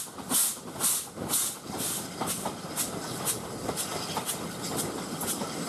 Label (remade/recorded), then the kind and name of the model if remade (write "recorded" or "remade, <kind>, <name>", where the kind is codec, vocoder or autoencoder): recorded